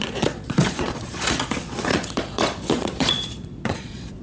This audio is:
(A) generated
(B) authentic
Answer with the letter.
A